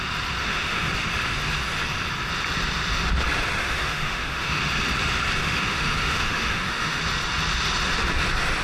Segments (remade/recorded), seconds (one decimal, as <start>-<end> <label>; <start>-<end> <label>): 0.0-0.4 recorded; 0.4-0.9 remade; 0.9-3.6 recorded; 3.6-4.6 remade; 4.6-5.4 recorded; 5.4-7.0 remade; 7.0-8.6 recorded